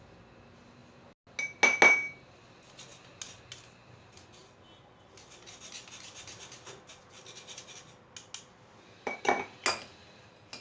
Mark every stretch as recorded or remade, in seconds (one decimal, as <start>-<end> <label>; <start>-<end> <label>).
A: 0.0-10.6 recorded